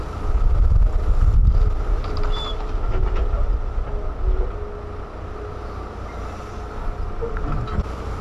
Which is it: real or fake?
real